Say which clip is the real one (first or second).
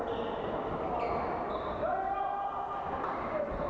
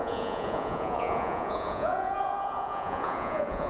first